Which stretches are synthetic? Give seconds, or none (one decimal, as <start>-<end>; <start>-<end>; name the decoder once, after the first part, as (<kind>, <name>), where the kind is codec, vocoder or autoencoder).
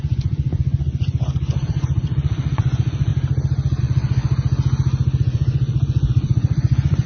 0.0-3.1 (vocoder, Vocos); 3.8-4.3; 5.2-7.1